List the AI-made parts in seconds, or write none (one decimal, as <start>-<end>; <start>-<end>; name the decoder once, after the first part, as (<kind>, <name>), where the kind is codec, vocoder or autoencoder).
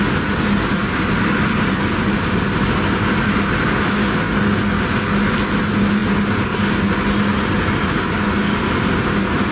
none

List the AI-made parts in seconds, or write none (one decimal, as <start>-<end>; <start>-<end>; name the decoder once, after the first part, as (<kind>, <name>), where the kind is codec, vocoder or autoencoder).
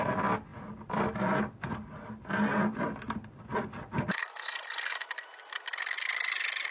none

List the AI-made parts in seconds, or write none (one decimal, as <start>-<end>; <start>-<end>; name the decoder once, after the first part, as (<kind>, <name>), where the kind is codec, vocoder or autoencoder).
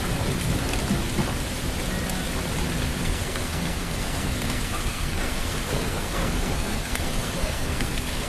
3.0-8.3 (codec, SNAC)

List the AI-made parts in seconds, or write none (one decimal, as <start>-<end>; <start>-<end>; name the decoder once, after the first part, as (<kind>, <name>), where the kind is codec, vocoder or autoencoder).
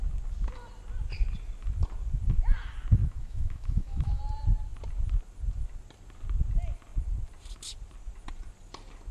3.0-4.2 (autoencoder, DAC-VAE)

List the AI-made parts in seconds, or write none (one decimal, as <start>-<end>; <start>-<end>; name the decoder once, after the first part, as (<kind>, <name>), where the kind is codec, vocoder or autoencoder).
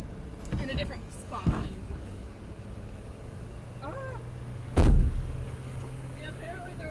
0.7-3.5 (codec, DAC); 4.5-6.9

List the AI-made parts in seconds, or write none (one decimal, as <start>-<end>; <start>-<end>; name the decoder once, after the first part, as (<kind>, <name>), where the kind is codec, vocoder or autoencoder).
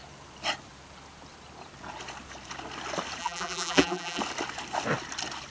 3.2-4.2 (vocoder, BigVGAN v2)